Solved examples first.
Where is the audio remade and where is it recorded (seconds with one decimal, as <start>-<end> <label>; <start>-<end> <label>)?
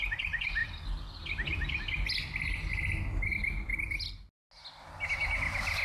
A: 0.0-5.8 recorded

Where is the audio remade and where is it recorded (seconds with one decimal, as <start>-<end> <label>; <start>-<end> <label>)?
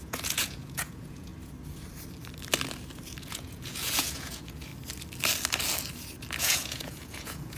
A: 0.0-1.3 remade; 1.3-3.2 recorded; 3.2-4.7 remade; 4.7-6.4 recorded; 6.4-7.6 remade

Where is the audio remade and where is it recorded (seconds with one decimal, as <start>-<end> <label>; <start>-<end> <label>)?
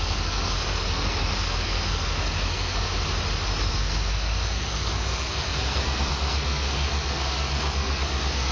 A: 0.0-2.9 remade; 2.9-3.6 recorded; 3.6-8.5 remade